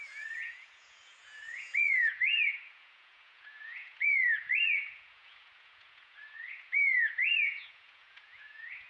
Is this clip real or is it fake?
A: fake